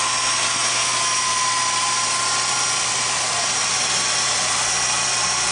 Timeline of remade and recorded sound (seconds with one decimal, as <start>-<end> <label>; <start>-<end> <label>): 0.0-5.5 recorded